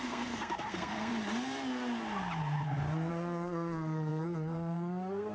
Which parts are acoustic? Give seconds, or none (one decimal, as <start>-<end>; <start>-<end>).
1.1-3.1